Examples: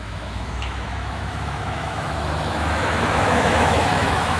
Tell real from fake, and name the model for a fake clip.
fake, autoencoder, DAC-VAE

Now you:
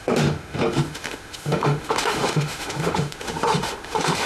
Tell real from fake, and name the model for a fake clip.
fake, autoencoder, DAC-VAE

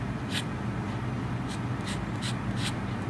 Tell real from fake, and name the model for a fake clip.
real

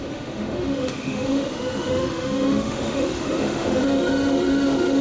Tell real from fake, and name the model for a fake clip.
fake, autoencoder, DAC-VAE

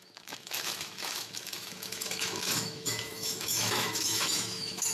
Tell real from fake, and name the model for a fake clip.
fake, autoencoder, DAC-VAE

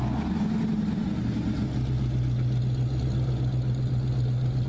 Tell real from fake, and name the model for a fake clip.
real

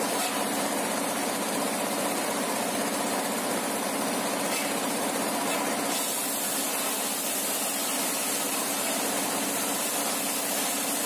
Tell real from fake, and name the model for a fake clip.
real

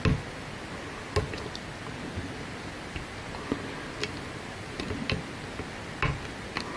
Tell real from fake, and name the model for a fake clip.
real